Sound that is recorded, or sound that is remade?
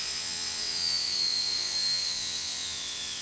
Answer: remade